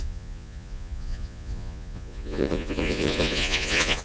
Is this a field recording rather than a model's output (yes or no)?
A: no